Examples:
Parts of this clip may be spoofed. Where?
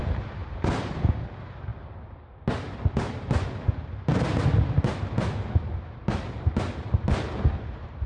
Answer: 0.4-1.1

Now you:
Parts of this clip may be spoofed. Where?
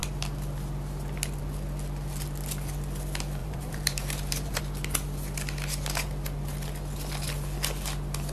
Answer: 3.4-4.6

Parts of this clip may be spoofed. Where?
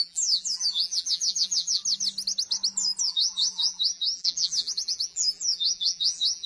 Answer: 0.0-1.8; 3.0-6.5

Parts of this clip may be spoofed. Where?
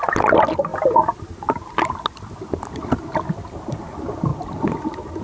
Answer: none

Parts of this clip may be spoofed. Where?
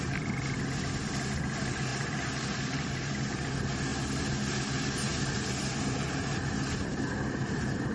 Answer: 1.9-3.5; 5.1-6.5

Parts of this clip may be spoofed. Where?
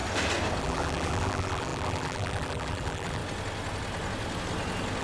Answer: 0.6-3.2